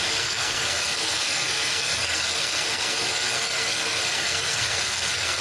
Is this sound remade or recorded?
remade